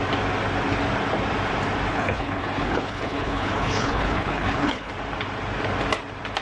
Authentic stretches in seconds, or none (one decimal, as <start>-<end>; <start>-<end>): 0.0-1.9; 4.9-6.4